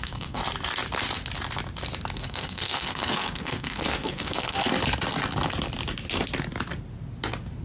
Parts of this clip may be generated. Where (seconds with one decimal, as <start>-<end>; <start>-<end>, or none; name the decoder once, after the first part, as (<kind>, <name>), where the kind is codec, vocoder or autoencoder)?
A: 0.0-0.4 (codec, SNAC); 2.1-4.6